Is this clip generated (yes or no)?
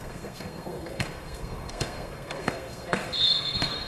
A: yes